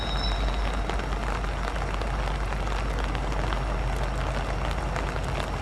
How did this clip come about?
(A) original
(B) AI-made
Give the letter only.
A